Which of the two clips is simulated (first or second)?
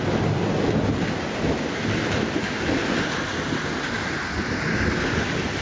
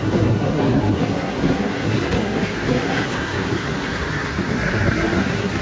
second